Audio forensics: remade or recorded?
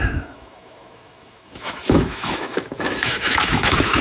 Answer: remade